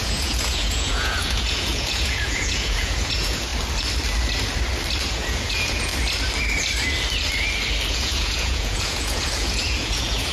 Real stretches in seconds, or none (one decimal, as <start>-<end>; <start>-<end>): 3.5-5.1; 5.9-7.9